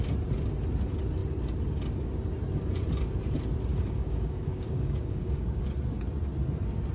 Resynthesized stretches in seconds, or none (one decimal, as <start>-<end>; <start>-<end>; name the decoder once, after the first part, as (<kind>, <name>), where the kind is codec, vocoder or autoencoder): 3.7-5.6 (codec, DAC)